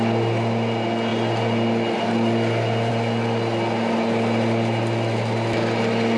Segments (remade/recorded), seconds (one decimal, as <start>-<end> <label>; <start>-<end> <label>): 0.0-6.2 recorded